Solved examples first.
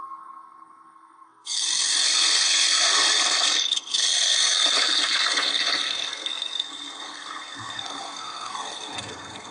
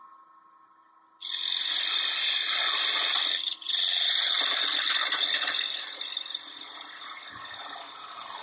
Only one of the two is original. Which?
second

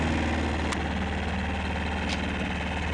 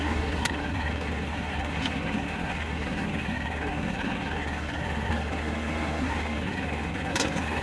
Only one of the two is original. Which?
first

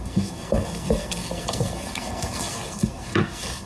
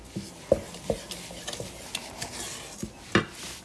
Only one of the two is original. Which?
second